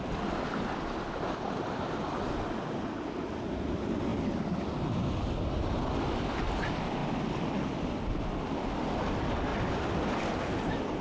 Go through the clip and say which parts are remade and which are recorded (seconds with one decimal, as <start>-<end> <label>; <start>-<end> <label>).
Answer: 0.0-11.0 recorded